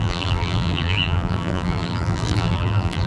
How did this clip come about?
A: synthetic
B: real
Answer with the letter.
A